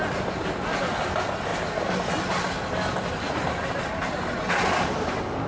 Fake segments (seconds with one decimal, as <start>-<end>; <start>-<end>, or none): none